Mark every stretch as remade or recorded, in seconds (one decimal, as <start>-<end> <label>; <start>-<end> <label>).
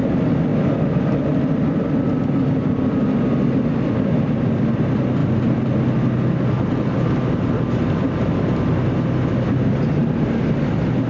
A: 0.0-11.1 recorded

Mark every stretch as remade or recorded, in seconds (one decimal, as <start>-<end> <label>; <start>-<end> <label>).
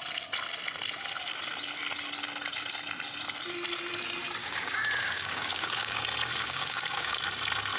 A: 0.0-4.4 recorded; 4.4-6.0 remade; 6.0-6.4 recorded; 6.4-7.2 remade; 7.2-7.8 recorded